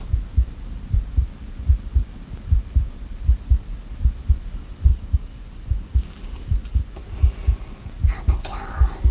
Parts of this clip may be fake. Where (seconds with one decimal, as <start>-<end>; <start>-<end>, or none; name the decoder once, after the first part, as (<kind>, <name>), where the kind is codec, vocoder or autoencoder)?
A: none